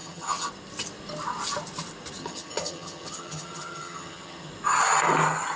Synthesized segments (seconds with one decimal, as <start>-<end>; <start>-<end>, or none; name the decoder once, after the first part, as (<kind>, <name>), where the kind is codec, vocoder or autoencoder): 0.0-0.5 (vocoder, HiFi-GAN); 2.2-4.5